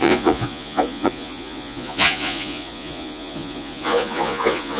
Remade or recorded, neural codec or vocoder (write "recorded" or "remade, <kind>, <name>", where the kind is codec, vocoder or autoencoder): remade, vocoder, Vocos